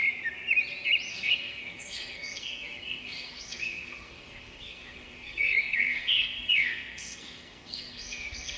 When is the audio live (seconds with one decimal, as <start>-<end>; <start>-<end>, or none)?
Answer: 0.0-1.1